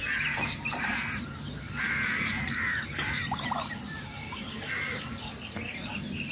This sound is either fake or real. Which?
fake